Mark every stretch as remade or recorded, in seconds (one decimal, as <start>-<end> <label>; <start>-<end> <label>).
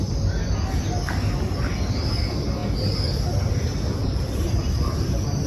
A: 0.0-4.0 recorded; 4.0-4.6 remade; 4.6-5.5 recorded